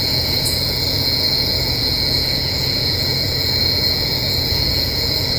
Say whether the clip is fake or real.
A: fake